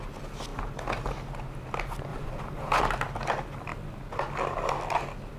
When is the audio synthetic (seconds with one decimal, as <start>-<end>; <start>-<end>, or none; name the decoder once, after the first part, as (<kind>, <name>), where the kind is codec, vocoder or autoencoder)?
2.1-2.8 (vocoder, BigVGAN v2)

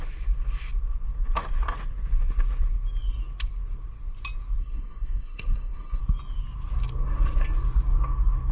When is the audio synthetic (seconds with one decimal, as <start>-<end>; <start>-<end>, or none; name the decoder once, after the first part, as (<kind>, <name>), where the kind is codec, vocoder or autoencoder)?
4.6-6.0 (codec, SNAC)

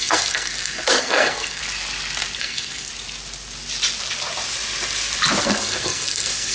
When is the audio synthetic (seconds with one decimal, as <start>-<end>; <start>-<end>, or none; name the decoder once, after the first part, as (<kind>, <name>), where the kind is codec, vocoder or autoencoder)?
0.0-1.6 (codec, SNAC); 2.4-2.9; 5.4-6.5